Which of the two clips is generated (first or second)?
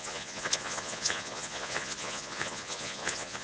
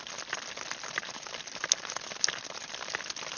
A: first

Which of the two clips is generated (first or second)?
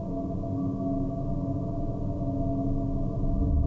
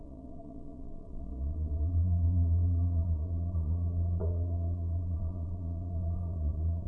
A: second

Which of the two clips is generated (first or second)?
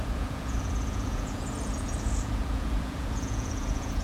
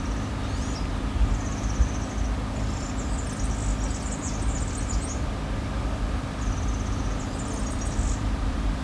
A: first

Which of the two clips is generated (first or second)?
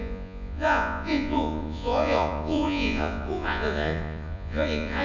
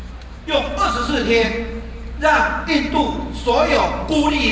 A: first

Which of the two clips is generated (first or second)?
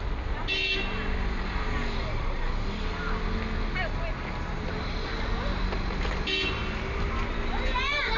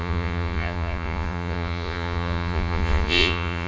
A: second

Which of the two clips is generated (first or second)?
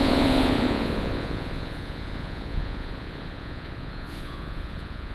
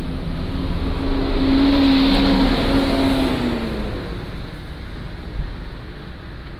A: first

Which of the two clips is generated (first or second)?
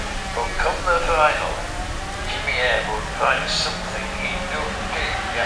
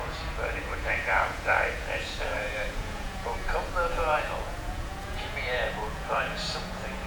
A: second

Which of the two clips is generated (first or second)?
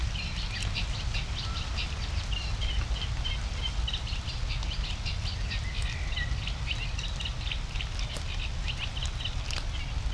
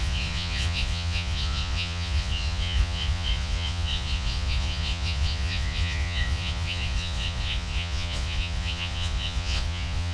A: second